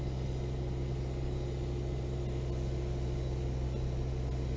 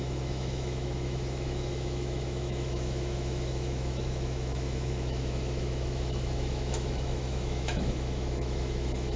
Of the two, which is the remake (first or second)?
second